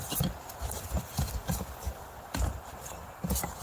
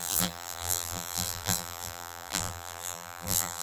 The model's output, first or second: second